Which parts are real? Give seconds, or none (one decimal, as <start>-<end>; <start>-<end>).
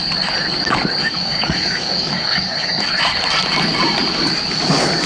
0.0-1.0; 2.9-5.1